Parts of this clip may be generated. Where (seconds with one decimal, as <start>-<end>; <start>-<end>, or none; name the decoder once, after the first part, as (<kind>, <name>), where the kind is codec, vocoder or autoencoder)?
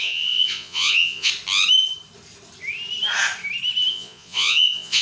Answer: 0.0-1.3 (vocoder, Vocos); 3.9-5.0